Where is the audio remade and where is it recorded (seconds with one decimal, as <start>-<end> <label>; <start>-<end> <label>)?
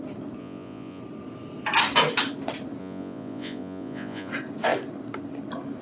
0.0-0.4 recorded; 0.4-1.0 remade; 1.0-2.8 recorded; 2.8-4.3 remade; 4.3-5.8 recorded